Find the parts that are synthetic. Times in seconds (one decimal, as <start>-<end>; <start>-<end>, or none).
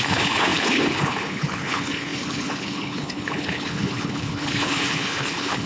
0.0-5.7